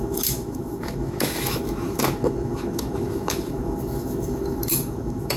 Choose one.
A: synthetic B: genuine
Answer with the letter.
A